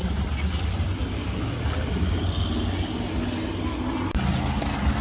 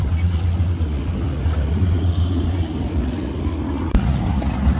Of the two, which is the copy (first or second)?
second